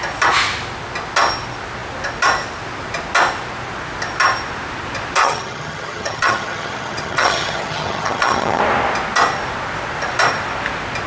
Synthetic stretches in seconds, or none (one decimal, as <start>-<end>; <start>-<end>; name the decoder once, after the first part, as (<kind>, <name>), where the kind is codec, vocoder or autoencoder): 5.2-8.6 (vocoder, HiFi-GAN)